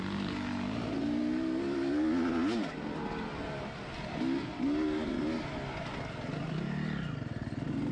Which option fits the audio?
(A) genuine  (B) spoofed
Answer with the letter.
A